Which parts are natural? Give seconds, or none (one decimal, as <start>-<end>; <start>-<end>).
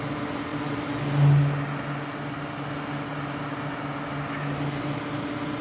0.0-5.6